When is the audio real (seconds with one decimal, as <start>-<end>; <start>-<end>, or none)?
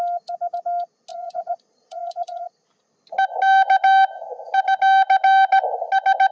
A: 0.0-1.1; 2.5-6.3